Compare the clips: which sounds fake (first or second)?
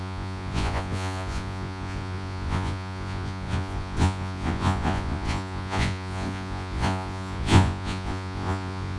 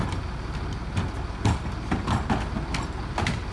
first